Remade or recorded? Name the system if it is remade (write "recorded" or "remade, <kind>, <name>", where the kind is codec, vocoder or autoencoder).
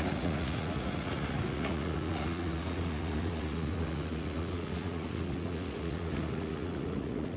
remade, vocoder, Vocos